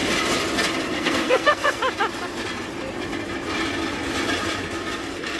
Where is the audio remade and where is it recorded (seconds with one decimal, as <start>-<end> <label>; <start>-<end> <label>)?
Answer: 0.0-0.9 recorded; 0.9-1.8 remade; 1.8-5.0 recorded; 5.0-5.4 remade